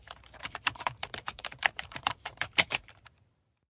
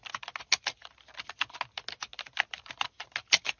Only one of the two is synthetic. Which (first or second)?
first